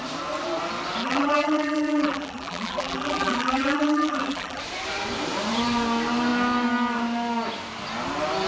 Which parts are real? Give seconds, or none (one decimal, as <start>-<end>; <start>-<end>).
0.0-1.0; 4.6-8.5